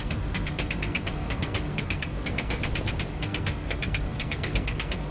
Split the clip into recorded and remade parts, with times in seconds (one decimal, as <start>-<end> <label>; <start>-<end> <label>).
0.0-2.6 remade; 2.6-3.1 recorded; 3.1-5.1 remade